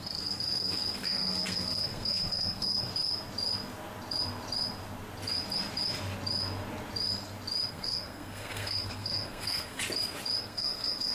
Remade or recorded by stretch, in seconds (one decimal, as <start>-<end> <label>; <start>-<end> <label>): 0.0-2.9 remade; 2.9-7.7 recorded; 7.7-9.8 remade; 9.8-10.4 recorded; 10.4-11.1 remade